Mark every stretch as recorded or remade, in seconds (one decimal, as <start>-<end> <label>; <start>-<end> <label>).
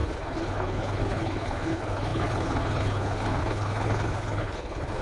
0.0-5.0 remade